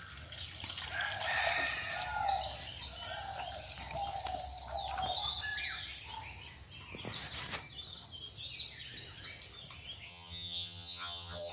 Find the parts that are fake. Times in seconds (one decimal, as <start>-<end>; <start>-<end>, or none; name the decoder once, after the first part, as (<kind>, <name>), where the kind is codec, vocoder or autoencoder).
10.1-11.5 (vocoder, HiFi-GAN)